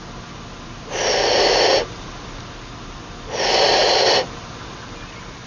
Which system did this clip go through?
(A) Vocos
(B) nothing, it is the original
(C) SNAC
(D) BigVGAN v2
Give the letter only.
B